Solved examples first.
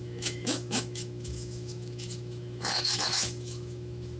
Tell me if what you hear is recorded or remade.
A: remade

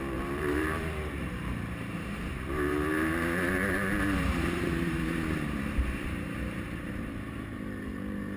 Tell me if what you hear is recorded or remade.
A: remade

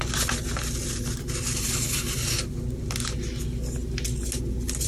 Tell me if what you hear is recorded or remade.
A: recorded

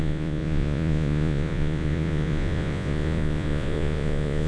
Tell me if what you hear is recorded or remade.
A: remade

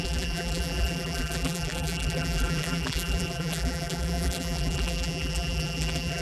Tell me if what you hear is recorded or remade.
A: remade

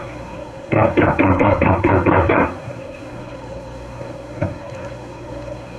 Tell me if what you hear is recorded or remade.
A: remade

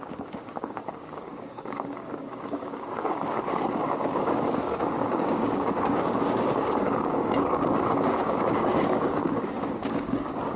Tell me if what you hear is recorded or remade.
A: remade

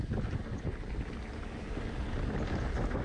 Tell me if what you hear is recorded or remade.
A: recorded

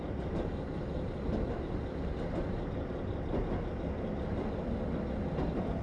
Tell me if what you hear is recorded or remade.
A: recorded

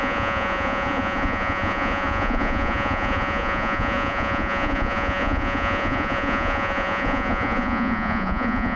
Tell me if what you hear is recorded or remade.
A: remade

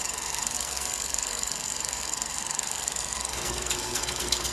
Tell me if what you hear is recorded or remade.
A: remade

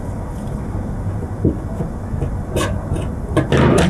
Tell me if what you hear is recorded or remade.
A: recorded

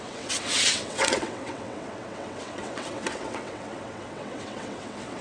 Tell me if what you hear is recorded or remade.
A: remade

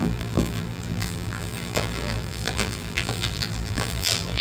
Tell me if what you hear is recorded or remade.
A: remade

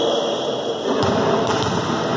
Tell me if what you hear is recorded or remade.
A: recorded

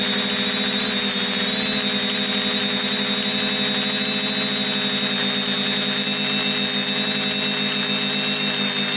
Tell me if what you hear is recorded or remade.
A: recorded